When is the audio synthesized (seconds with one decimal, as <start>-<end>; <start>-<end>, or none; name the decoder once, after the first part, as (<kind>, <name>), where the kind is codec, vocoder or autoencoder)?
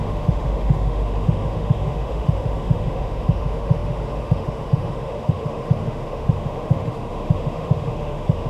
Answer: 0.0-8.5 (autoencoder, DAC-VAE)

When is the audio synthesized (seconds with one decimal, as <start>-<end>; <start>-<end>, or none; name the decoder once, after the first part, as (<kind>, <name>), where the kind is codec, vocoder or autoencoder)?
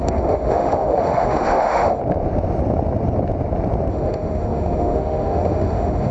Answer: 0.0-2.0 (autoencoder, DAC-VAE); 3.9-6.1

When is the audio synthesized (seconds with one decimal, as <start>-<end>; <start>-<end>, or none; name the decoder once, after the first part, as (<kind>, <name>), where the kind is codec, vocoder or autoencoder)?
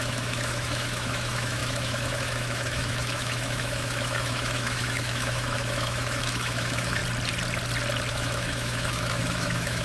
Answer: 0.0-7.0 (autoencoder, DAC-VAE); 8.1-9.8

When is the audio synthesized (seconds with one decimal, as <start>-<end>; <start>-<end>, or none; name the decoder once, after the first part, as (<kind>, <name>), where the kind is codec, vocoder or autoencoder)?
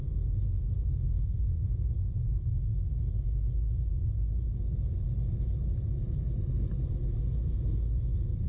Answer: 0.0-1.7 (autoencoder, DAC-VAE)